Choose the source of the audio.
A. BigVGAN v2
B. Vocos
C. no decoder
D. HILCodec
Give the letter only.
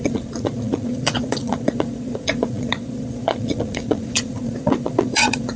B